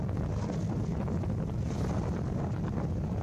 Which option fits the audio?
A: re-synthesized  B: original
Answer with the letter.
B